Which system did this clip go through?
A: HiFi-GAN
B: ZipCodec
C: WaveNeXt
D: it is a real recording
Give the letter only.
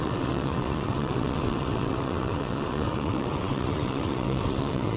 C